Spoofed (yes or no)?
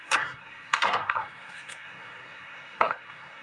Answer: yes